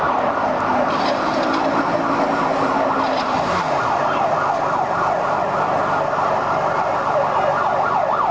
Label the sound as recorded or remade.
recorded